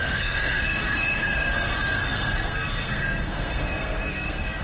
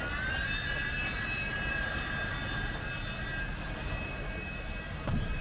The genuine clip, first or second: second